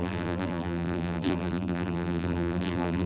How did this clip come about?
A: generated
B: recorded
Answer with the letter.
A